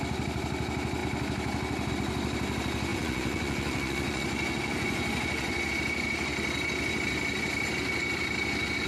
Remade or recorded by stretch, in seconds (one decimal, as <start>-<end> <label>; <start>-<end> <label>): 0.0-2.9 recorded; 2.9-5.7 remade; 5.7-8.9 recorded